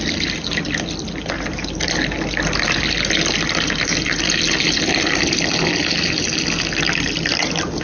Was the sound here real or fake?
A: real